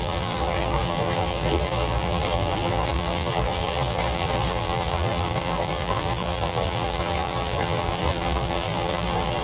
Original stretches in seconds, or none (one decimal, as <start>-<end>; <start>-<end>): none